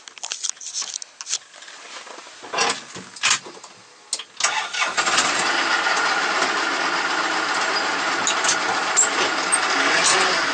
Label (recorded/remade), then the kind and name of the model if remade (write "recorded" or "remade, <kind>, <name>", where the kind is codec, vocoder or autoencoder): recorded